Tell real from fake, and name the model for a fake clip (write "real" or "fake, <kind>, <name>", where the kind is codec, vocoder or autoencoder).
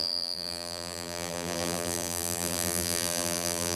fake, vocoder, BigVGAN v2